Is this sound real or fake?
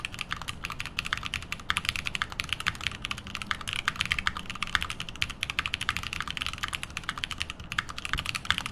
real